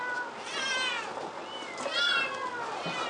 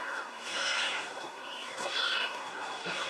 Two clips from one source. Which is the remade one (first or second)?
second